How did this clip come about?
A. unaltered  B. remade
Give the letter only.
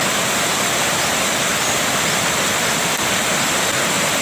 A